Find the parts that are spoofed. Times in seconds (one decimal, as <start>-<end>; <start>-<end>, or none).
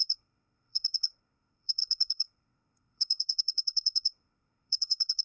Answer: 0.0-5.2